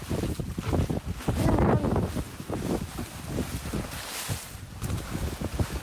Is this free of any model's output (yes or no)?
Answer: yes